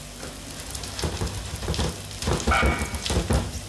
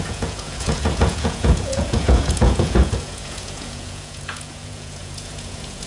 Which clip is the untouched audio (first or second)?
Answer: first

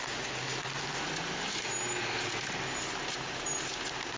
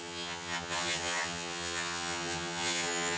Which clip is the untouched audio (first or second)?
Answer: first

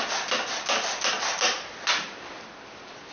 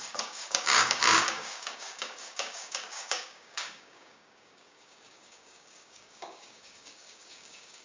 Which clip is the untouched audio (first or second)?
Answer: first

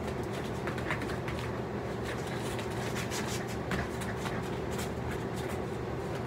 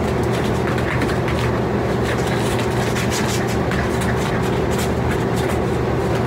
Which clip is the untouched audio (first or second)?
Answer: second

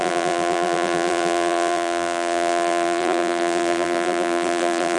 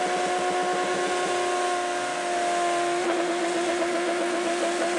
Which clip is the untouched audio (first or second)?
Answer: second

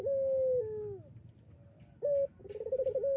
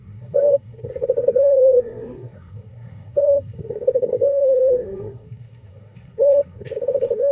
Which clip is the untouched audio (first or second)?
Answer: first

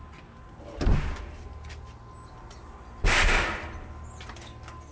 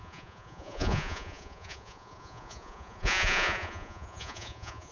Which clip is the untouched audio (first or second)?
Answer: first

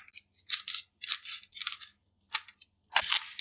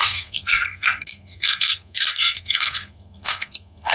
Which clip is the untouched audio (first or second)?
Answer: first